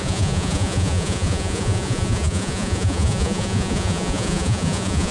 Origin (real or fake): fake